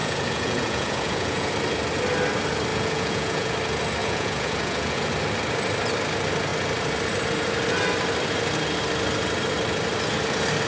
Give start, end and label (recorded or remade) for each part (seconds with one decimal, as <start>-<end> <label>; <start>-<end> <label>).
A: 0.0-1.5 remade; 1.5-2.7 recorded; 2.7-3.5 remade; 3.5-4.0 recorded; 4.0-5.1 remade; 5.1-10.7 recorded